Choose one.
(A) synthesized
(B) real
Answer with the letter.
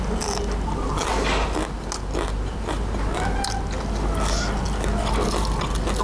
B